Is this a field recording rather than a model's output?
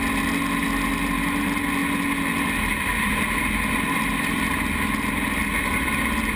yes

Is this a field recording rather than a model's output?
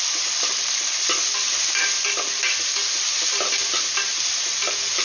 yes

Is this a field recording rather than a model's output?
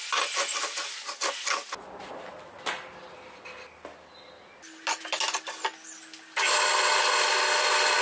yes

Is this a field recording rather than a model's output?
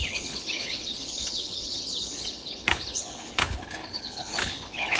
no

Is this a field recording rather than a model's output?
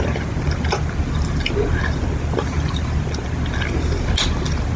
yes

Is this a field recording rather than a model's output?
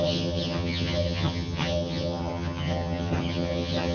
no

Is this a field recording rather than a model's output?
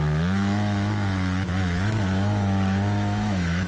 no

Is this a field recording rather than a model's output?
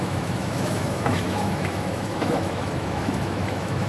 no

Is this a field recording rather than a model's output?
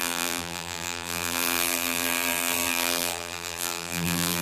no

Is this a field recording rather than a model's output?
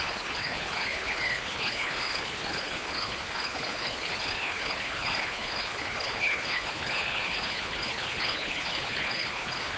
no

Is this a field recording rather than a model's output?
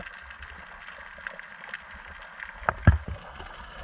yes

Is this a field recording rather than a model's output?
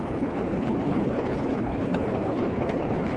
no